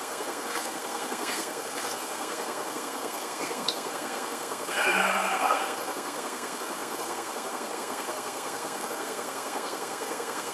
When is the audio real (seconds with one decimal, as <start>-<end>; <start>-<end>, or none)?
none